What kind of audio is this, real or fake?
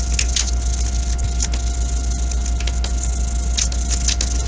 real